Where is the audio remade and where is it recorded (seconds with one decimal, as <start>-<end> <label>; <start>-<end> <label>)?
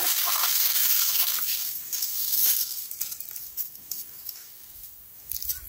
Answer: 0.0-2.9 remade; 2.9-3.4 recorded; 3.4-5.3 remade; 5.3-5.7 recorded